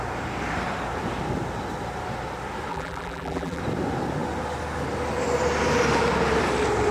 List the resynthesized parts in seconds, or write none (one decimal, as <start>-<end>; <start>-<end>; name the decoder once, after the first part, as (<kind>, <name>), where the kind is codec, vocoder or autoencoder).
2.7-3.6 (vocoder, BigVGAN v2)